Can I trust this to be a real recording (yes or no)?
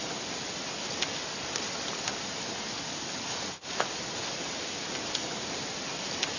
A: yes